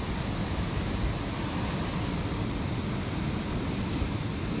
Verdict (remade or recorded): recorded